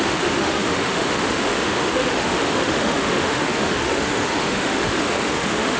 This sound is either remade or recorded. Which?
remade